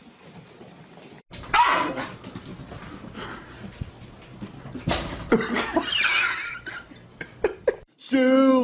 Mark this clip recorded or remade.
recorded